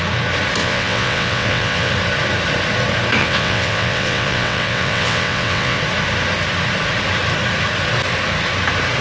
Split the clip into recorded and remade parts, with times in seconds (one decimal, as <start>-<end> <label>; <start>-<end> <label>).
0.0-0.6 recorded; 0.6-1.9 remade; 1.9-3.2 recorded; 3.2-5.8 remade; 5.8-9.0 recorded